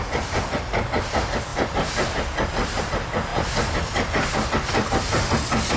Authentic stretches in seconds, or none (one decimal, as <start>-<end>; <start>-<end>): 0.0-5.8